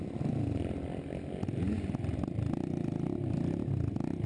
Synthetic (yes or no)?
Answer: no